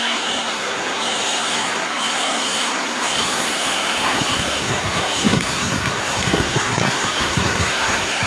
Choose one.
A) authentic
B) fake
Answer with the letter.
B